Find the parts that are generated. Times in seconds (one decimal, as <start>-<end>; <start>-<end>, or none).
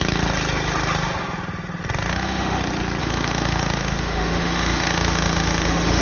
2.1-2.6; 3.0-6.0